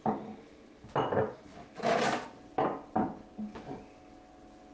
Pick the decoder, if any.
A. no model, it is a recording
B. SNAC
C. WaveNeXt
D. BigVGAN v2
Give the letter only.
A